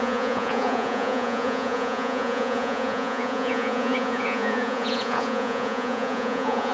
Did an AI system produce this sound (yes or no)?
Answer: yes